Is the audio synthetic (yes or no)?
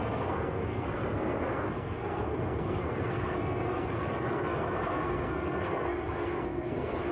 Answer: yes